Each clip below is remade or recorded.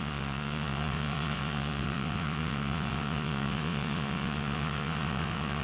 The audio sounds remade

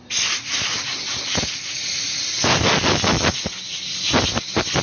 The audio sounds recorded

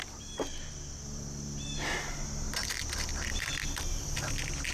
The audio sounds recorded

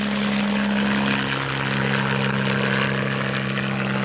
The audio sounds recorded